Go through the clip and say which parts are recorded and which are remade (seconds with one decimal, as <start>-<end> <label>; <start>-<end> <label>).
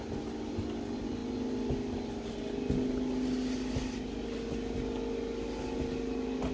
0.0-6.5 recorded